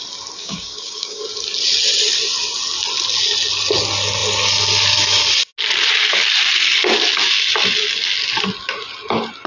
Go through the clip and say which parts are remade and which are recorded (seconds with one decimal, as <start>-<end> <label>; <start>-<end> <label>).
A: 0.0-0.4 recorded; 0.4-1.2 remade; 1.2-9.5 recorded